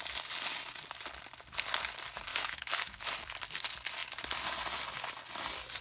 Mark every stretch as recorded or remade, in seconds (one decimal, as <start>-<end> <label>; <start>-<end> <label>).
0.0-2.3 recorded; 2.3-3.1 remade; 3.1-5.8 recorded